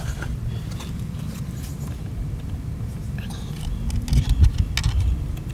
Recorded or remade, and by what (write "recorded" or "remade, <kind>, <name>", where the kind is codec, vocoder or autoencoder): recorded